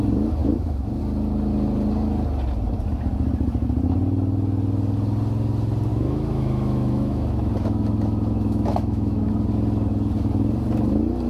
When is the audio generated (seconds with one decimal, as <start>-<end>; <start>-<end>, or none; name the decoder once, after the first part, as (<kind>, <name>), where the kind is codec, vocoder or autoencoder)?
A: 0.4-1.0 (autoencoder, DAC-VAE); 5.9-9.3